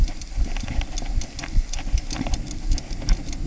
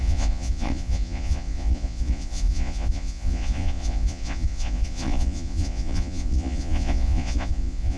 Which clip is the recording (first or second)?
first